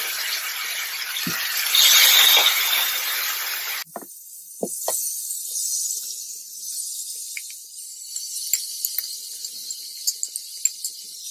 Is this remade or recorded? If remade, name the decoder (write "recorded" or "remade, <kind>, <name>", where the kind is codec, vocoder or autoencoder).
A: recorded